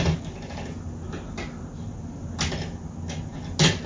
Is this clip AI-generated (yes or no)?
no